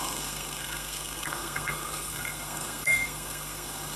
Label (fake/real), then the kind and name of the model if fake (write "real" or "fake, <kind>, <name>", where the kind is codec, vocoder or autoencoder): fake, codec, SNAC